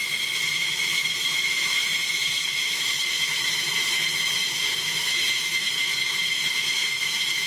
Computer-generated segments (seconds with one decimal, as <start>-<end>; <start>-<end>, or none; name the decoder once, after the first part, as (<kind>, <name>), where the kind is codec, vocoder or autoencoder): 0.5-7.5 (autoencoder, DAC-VAE)